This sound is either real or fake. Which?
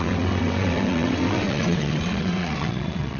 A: fake